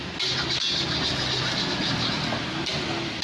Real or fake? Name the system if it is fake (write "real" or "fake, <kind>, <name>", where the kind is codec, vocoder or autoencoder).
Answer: real